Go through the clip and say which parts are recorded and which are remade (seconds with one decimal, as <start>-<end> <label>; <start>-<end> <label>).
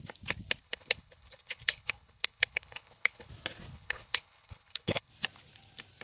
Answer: 0.0-0.6 recorded; 0.6-3.3 remade; 3.3-3.7 recorded; 3.7-5.1 remade; 5.1-6.0 recorded